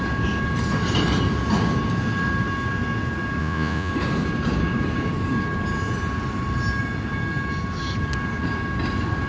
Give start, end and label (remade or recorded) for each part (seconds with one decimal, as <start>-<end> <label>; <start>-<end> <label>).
0.0-3.4 recorded; 3.4-3.9 remade; 3.9-9.3 recorded